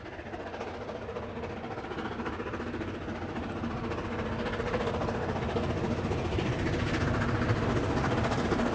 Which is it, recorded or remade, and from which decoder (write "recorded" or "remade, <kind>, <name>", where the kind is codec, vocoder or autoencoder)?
recorded